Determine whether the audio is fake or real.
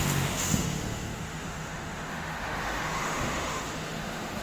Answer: fake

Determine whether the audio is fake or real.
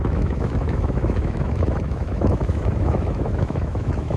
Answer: fake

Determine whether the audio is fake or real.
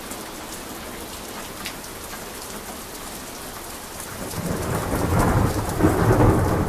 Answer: real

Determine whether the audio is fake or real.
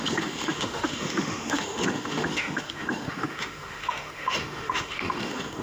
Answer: fake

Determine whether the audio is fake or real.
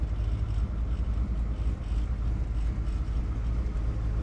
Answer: real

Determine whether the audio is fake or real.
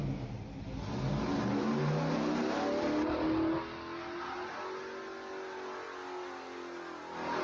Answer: real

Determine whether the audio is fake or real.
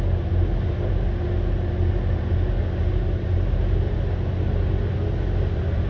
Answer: real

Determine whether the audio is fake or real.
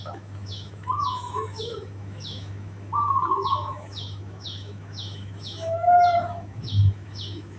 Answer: fake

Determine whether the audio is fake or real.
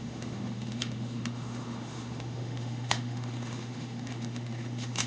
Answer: fake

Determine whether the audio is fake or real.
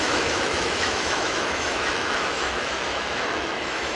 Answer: fake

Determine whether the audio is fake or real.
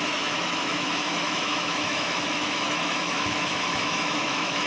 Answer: fake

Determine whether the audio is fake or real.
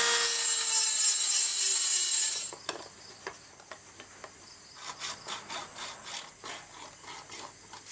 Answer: real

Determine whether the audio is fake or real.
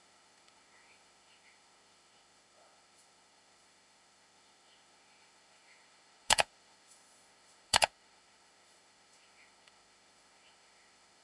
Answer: fake